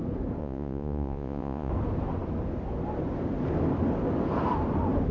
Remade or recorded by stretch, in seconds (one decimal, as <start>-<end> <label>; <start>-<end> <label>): 0.0-0.4 recorded; 0.4-1.7 remade; 1.7-5.1 recorded